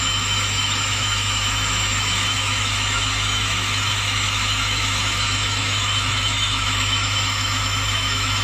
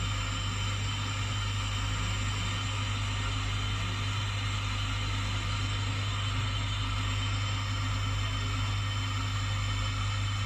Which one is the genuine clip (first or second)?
second